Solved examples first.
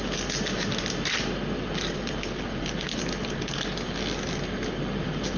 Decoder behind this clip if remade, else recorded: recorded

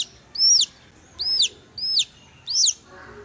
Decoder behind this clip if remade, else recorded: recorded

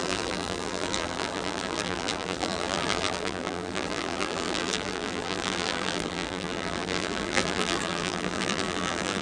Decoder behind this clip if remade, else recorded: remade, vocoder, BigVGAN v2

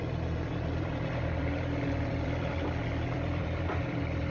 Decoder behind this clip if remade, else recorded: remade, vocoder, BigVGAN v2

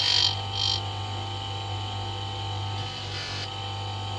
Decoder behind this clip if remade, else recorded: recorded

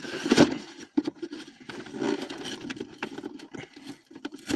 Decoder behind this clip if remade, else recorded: recorded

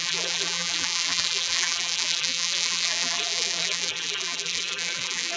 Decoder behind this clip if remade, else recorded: remade, vocoder, BigVGAN v2